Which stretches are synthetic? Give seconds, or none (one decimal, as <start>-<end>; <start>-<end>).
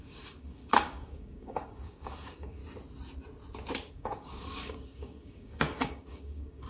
0.0-2.6; 3.9-6.7